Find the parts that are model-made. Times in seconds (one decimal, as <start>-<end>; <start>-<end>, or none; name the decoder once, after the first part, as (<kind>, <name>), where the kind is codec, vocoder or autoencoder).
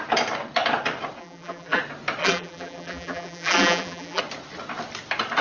1.2-1.8 (vocoder, BigVGAN v2); 2.2-4.2